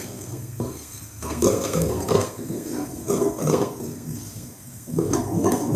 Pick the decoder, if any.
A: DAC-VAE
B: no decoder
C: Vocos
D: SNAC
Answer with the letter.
D